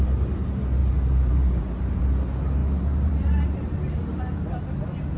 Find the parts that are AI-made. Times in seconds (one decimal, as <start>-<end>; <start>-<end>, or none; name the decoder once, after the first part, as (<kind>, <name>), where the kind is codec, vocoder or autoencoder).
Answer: 0.8-2.0 (vocoder, BigVGAN v2); 2.6-4.2